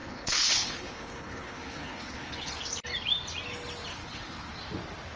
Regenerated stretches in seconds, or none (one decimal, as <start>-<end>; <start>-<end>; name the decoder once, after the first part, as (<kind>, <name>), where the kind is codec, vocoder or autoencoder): 0.0-2.5 (codec, HILCodec); 3.9-4.5